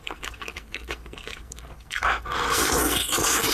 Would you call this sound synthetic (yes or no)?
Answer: yes